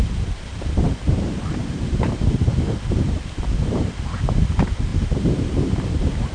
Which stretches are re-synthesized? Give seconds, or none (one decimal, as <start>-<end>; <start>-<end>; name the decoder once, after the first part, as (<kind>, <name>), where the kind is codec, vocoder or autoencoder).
0.0-4.9 (vocoder, BigVGAN v2)